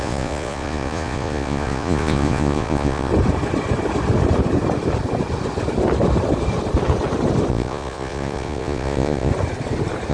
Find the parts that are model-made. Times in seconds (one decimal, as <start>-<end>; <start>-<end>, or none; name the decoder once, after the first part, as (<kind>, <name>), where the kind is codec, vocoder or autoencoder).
0.0-3.1 (vocoder, Vocos); 7.5-9.3